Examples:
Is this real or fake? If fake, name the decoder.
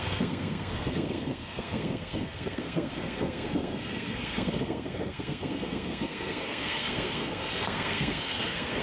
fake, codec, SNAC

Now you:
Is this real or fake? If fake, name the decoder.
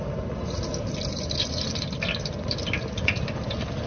real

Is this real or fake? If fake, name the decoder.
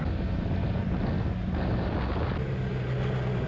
real